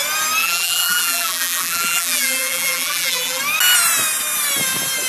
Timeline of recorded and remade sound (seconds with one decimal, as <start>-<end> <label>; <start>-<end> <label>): 0.0-0.4 recorded; 0.4-3.4 remade; 3.4-5.1 recorded

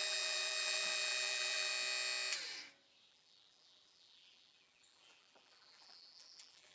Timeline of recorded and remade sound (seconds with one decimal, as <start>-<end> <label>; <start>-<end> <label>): 0.0-1.7 remade; 1.7-3.1 recorded; 3.1-6.7 remade

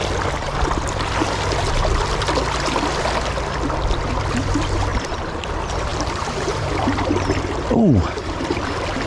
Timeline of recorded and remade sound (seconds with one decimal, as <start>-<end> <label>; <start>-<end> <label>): 0.0-4.9 recorded; 4.9-5.5 remade; 5.5-5.9 recorded; 5.9-8.6 remade; 8.6-9.1 recorded

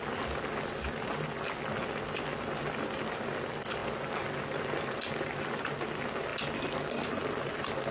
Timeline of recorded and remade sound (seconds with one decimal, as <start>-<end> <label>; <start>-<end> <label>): 0.0-7.9 recorded

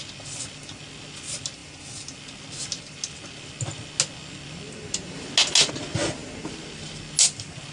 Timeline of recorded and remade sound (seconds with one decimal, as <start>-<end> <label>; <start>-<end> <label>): 0.0-7.7 recorded

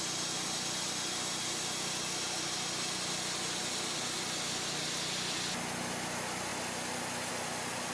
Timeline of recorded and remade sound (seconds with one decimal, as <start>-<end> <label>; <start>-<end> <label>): 0.0-7.9 recorded